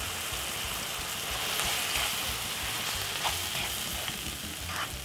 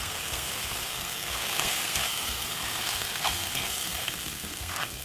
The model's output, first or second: second